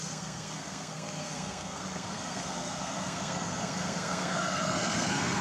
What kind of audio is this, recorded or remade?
remade